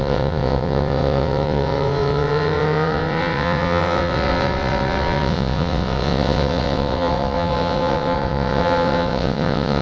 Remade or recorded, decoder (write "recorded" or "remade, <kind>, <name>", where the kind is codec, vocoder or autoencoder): remade, vocoder, WaveNeXt